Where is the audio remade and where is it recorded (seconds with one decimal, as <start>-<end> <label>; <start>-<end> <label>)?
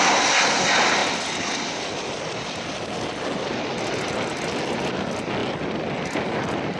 0.0-6.8 recorded